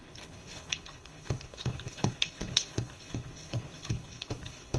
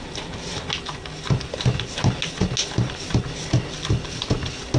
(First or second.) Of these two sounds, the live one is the second